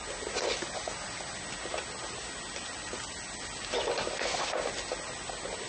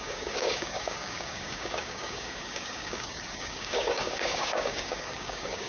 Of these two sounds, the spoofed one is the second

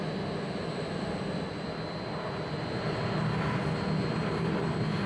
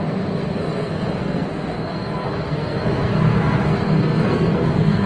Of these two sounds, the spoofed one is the second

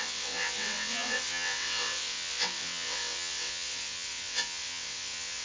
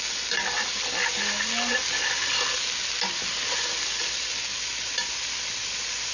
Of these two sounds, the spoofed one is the first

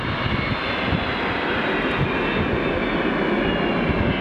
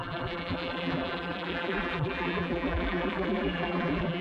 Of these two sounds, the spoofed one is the second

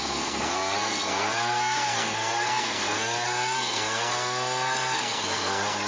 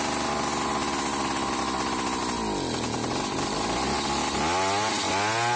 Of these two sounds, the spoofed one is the first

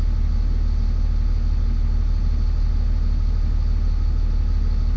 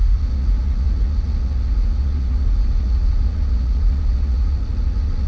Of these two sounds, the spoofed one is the second